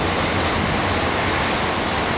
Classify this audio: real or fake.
real